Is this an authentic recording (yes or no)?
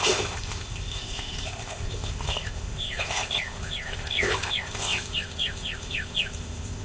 no